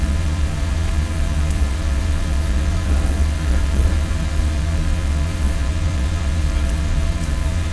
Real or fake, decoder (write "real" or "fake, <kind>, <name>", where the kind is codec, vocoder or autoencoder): fake, vocoder, Vocos